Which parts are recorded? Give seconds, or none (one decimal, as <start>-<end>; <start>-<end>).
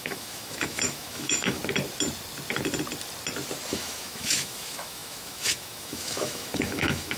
1.6-3.7